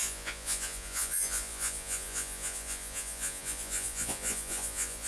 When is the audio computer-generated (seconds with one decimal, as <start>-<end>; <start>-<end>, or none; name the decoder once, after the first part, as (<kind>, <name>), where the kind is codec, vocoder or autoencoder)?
0.0-5.1 (vocoder, Vocos)